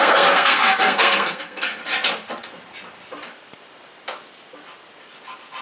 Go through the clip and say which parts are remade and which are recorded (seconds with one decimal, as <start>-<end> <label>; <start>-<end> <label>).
0.0-1.8 remade; 1.8-5.6 recorded